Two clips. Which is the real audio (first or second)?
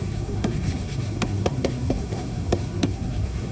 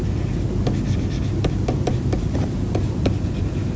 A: second